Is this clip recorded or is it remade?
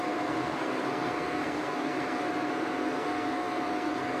remade